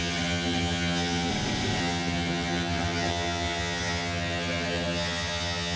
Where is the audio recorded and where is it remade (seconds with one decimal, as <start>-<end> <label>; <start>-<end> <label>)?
0.0-1.3 remade; 1.3-1.8 recorded; 1.8-5.8 remade